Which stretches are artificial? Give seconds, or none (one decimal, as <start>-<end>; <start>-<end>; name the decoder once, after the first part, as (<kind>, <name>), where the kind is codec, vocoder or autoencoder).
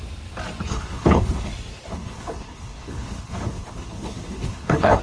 0.7-1.5 (codec, HILCodec); 1.9-5.0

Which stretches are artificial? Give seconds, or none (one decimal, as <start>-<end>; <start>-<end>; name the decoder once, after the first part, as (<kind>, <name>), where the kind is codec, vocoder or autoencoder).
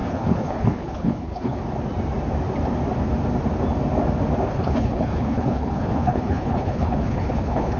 0.0-1.6 (codec, HILCodec); 4.5-7.8